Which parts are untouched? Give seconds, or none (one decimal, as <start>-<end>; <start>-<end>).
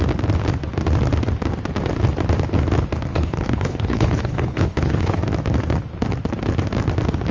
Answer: 0.0-3.1; 5.2-7.3